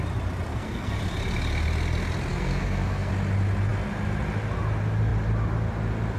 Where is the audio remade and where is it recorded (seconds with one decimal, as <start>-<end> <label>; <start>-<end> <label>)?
0.0-0.5 recorded; 0.5-1.0 remade; 1.0-2.3 recorded; 2.3-3.1 remade; 3.1-6.2 recorded